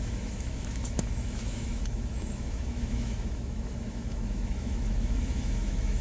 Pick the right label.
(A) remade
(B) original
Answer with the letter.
A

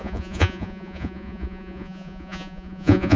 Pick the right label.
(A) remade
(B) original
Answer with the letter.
A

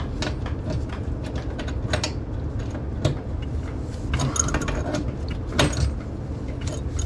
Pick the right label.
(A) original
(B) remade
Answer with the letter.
A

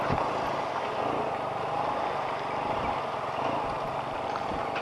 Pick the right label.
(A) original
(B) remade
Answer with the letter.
A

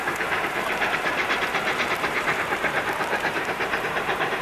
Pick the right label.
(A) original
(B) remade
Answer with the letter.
B